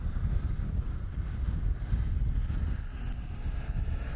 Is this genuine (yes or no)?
yes